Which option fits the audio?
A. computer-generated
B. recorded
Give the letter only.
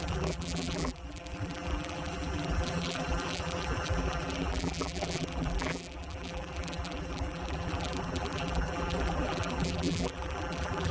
A